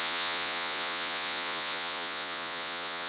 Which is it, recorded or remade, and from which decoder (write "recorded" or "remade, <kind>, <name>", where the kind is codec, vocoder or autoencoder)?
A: remade, vocoder, Vocos